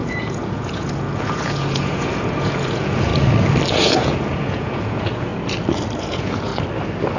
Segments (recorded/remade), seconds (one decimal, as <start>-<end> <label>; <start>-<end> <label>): 0.0-3.1 remade; 3.1-3.7 recorded; 3.7-5.3 remade; 5.3-6.0 recorded; 6.0-6.5 remade; 6.5-7.2 recorded